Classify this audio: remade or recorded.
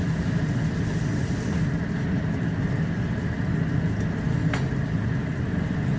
recorded